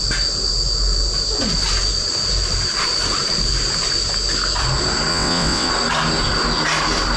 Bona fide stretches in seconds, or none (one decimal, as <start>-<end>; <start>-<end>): 0.0-5.1; 5.7-7.2